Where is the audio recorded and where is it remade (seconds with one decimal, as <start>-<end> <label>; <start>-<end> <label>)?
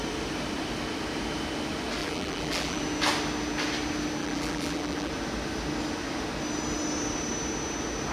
0.0-2.0 recorded; 2.0-2.8 remade; 2.8-4.2 recorded; 4.2-5.1 remade; 5.1-8.1 recorded